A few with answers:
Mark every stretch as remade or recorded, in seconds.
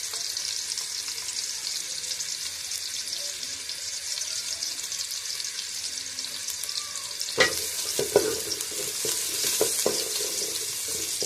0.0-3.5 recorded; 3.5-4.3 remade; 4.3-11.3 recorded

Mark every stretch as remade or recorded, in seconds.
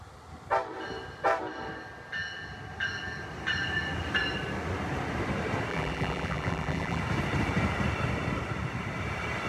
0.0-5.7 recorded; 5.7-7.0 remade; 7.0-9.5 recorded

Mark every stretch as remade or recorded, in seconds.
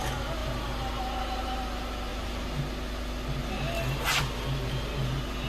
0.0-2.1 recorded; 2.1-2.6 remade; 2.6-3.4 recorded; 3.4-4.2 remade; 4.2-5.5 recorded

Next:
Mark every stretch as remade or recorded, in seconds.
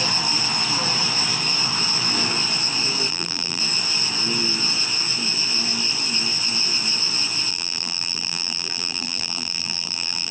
0.0-3.1 recorded; 3.1-3.6 remade; 3.6-7.5 recorded; 7.5-10.3 remade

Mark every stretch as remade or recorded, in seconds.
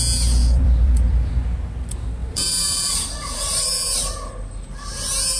0.0-0.4 recorded; 0.4-1.3 remade; 1.3-2.2 recorded; 2.2-4.1 remade; 4.1-5.4 recorded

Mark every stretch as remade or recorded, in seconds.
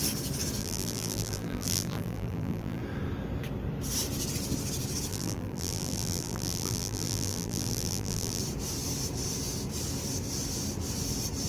0.0-0.6 recorded; 0.6-2.8 remade; 2.8-5.1 recorded; 5.1-8.4 remade; 8.4-11.5 recorded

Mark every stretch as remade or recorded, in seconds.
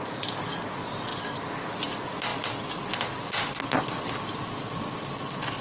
0.0-5.6 recorded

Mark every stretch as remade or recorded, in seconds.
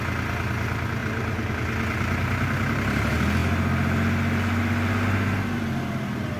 0.0-1.0 recorded; 1.0-1.5 remade; 1.5-6.4 recorded